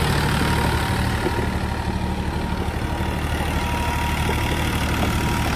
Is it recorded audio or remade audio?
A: recorded